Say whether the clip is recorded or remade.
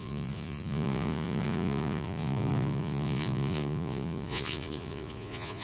remade